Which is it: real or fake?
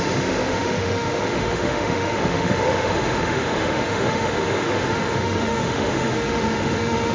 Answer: fake